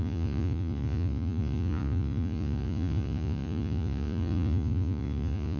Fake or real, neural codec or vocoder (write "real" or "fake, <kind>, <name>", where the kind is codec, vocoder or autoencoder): fake, vocoder, Vocos